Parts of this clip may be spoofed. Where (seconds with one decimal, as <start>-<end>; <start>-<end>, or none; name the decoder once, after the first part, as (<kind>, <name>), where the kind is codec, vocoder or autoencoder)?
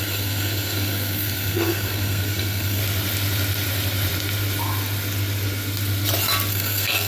0.0-2.8 (codec, SNAC); 6.5-7.1